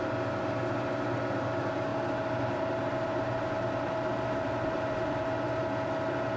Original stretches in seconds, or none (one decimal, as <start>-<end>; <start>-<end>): 0.0-1.9; 5.6-6.4